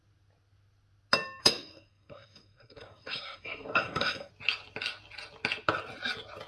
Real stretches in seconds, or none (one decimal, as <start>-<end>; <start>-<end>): 0.0-1.4; 4.3-6.5